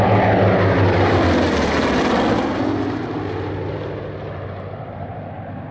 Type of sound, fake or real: real